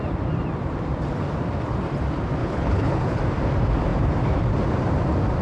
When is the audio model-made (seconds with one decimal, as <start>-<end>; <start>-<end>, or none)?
2.4-3.2